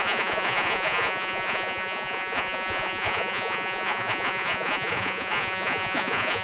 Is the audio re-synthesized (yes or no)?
yes